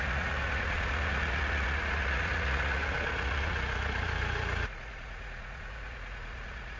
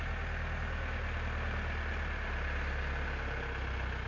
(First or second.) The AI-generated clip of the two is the first